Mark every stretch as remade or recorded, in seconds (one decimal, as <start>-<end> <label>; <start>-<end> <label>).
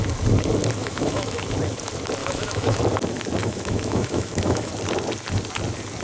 0.0-0.8 recorded; 0.8-1.4 remade; 1.4-2.2 recorded; 2.2-2.8 remade; 2.8-3.4 recorded; 3.4-4.7 remade; 4.7-6.0 recorded